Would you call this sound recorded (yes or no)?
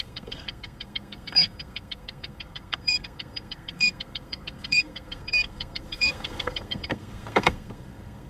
no